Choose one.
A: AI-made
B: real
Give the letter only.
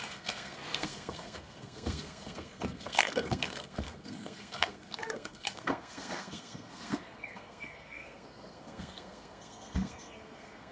A